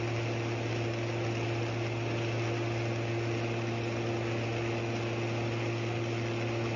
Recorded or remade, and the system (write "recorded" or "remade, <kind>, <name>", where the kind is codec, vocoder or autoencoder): recorded